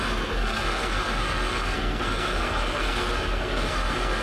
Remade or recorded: remade